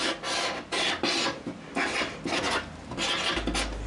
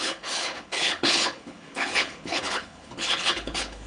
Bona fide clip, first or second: first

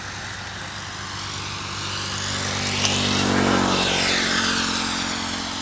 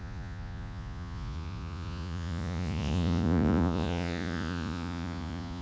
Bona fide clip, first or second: first